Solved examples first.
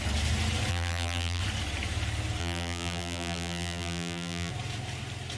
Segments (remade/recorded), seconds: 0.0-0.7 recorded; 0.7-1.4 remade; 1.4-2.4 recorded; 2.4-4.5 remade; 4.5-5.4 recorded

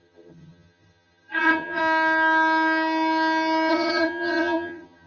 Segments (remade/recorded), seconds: 0.0-1.8 remade; 1.8-3.7 recorded; 3.7-5.1 remade

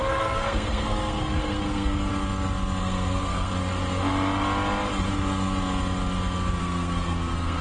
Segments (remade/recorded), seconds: 0.0-2.1 remade; 2.1-2.8 recorded; 2.8-3.5 remade; 3.5-6.6 recorded; 6.6-7.6 remade

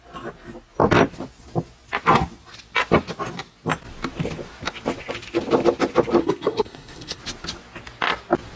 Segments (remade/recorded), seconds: 0.0-6.2 recorded; 6.2-7.2 remade; 7.2-8.6 recorded

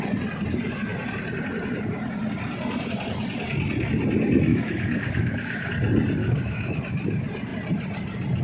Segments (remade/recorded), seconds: 0.0-4.5 recorded; 4.5-5.7 remade; 5.7-6.2 recorded; 6.2-6.8 remade; 6.8-8.4 recorded

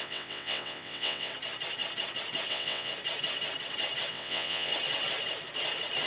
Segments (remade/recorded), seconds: 0.0-1.3 remade; 1.3-2.5 recorded; 2.5-2.9 remade; 2.9-4.1 recorded; 4.1-4.7 remade; 4.7-6.1 recorded

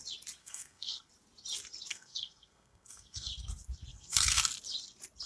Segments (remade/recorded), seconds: 0.0-0.4 recorded; 0.4-1.1 remade; 1.1-1.9 recorded; 1.9-3.3 remade; 3.3-3.9 recorded; 3.9-4.4 remade; 4.4-5.3 recorded